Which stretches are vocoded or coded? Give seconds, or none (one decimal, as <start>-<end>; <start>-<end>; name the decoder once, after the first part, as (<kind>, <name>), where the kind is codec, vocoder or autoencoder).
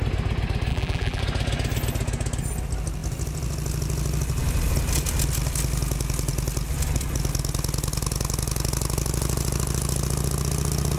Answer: 0.7-1.2 (vocoder, BigVGAN v2)